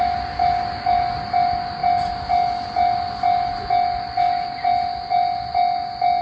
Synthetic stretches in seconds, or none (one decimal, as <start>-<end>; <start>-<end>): none